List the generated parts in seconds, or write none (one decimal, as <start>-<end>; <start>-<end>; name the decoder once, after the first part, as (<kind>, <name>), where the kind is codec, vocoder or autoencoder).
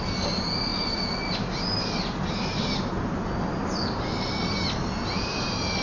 none